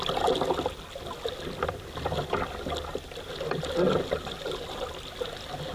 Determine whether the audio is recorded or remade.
recorded